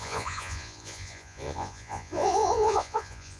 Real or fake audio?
fake